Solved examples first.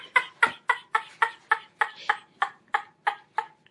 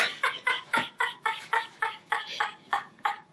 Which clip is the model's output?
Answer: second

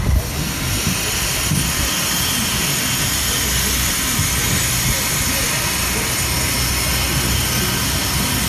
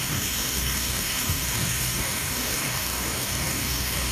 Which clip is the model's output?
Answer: second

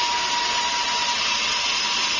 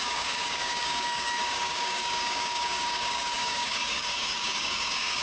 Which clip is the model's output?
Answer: second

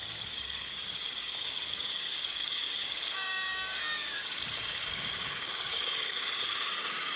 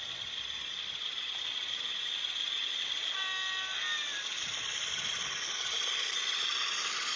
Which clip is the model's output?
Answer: first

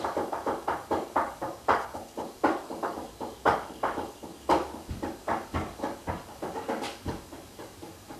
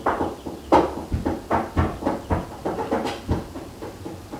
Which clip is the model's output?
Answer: first